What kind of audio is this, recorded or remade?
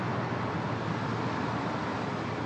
recorded